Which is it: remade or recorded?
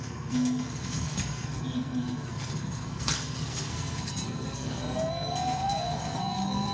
remade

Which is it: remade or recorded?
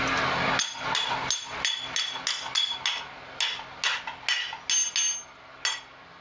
recorded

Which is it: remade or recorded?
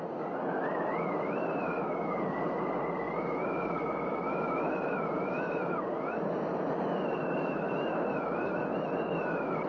recorded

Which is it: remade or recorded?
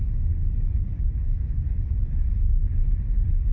remade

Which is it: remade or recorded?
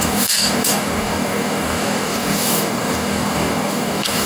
remade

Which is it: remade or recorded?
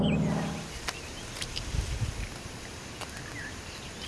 recorded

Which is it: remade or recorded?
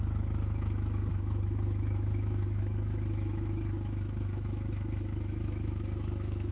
remade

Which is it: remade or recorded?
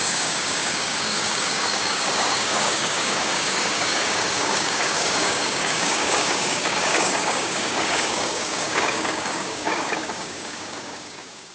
remade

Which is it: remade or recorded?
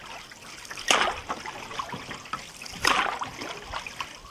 recorded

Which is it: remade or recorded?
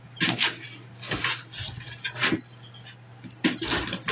recorded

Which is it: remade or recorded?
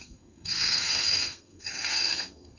remade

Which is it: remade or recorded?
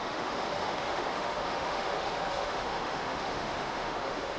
remade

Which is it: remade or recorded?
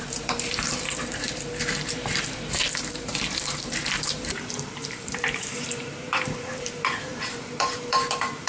remade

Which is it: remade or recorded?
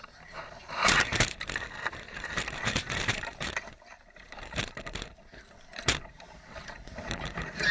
remade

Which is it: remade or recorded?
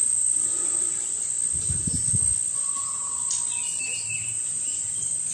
recorded